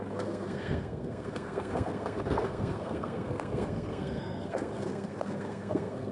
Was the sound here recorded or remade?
remade